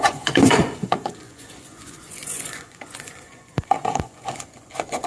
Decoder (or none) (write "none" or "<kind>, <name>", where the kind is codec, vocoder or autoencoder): vocoder, Vocos